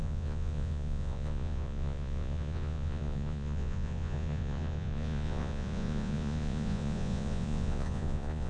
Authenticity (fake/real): fake